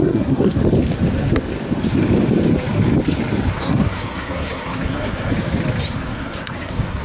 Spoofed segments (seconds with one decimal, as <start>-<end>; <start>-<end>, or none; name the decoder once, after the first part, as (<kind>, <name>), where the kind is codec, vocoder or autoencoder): 0.0-0.6 (codec, SNAC); 3.5-5.3; 5.9-7.0